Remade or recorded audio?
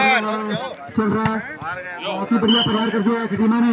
recorded